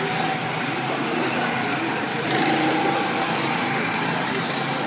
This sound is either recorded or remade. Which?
recorded